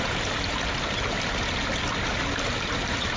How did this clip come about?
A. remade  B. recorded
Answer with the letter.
B